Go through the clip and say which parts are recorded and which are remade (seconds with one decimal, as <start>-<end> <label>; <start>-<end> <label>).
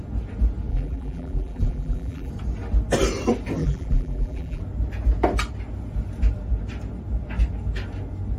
0.0-0.7 recorded; 0.7-2.3 remade; 2.3-3.6 recorded; 3.6-4.6 remade; 4.6-8.4 recorded